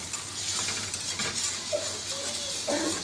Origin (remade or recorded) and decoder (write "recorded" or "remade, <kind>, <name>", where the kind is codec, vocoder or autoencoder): recorded